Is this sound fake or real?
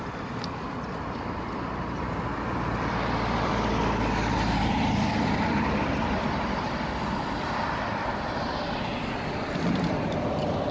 fake